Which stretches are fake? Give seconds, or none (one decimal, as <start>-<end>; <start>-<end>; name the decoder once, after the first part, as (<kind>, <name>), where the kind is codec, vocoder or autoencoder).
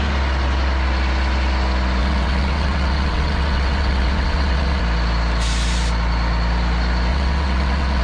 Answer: 2.0-4.8 (vocoder, WaveNeXt); 7.1-8.0